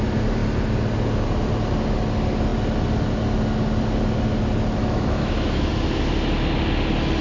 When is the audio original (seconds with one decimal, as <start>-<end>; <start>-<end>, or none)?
0.0-4.8; 5.7-7.2